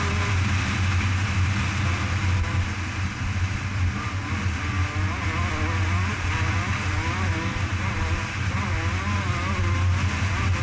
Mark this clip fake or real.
real